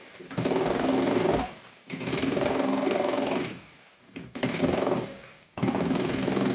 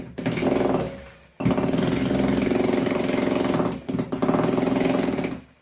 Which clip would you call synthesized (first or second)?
first